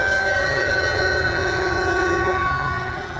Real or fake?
fake